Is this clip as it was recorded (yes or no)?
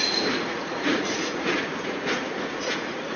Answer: no